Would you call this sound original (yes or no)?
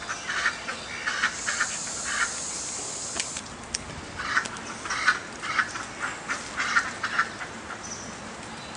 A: yes